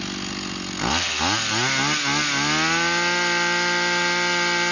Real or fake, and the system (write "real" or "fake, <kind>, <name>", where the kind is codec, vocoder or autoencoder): real